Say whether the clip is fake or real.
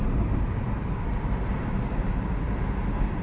real